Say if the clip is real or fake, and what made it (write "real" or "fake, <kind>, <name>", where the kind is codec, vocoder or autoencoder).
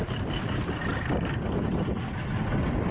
real